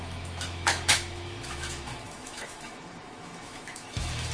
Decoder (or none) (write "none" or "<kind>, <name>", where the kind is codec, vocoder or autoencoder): autoencoder, DAC-VAE